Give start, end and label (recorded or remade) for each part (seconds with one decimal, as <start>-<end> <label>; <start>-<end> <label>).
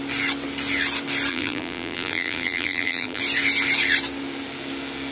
0.0-1.3 recorded; 1.3-3.2 remade; 3.2-5.1 recorded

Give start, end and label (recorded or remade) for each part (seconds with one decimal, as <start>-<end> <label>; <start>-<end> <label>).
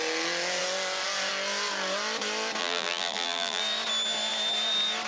0.0-2.6 recorded; 2.6-3.6 remade; 3.6-5.1 recorded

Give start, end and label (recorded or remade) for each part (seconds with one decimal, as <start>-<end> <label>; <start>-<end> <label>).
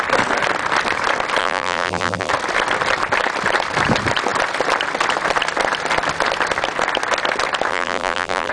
0.0-1.4 recorded; 1.4-2.3 remade; 2.3-7.7 recorded; 7.7-8.5 remade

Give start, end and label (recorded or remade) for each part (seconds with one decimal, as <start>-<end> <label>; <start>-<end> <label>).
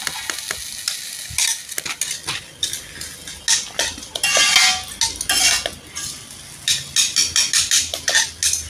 0.0-8.7 recorded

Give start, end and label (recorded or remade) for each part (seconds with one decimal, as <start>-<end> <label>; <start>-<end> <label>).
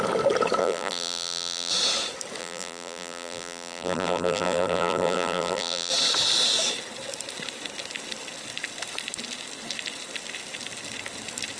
0.0-0.6 recorded; 0.6-1.7 remade; 1.7-2.4 recorded; 2.4-5.9 remade; 5.9-11.6 recorded